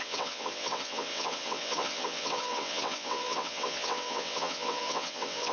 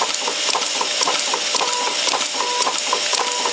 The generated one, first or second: first